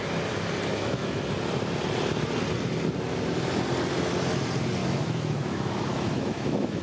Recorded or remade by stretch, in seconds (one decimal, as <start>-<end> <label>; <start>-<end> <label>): 0.0-0.7 recorded; 0.7-1.2 remade; 1.2-4.8 recorded; 4.8-6.8 remade